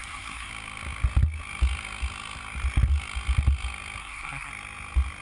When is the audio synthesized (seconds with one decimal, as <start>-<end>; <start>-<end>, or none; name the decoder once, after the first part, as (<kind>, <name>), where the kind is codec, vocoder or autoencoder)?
0.0-0.5 (codec, SNAC); 4.0-4.5